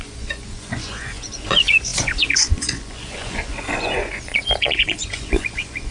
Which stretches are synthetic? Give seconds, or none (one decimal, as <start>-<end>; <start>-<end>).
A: 0.0-5.9